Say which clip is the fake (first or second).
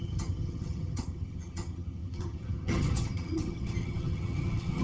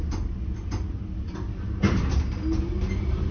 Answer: first